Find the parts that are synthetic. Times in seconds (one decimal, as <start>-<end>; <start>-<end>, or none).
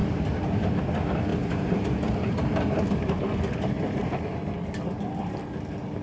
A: 0.0-0.8; 1.3-4.1